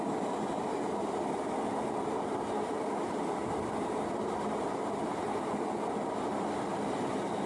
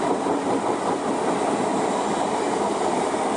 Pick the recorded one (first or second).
first